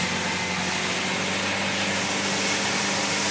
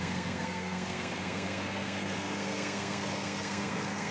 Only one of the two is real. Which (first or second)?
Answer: first